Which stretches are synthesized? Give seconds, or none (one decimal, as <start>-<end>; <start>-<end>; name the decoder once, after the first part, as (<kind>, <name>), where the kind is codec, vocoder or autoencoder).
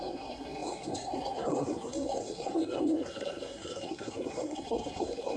0.0-5.4 (codec, SNAC)